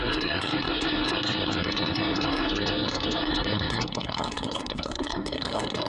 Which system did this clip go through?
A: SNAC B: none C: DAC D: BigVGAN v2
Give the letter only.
A